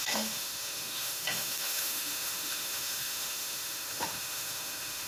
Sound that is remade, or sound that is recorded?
remade